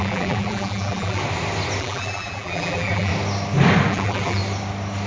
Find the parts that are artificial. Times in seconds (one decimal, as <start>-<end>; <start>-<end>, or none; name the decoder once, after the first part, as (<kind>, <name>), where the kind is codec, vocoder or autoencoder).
0.0-1.2 (vocoder, BigVGAN v2); 1.8-3.1; 3.9-4.4